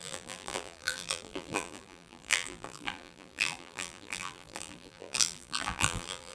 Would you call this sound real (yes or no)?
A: no